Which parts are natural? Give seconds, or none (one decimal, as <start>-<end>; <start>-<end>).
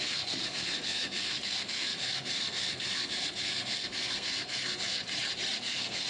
5.0-5.6